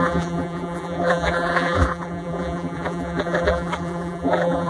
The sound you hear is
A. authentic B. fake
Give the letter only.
B